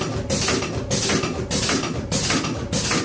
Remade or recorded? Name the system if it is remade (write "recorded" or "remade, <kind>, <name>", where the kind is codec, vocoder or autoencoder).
recorded